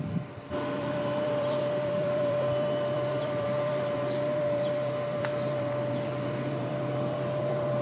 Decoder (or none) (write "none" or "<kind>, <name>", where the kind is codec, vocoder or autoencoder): vocoder, BigVGAN v2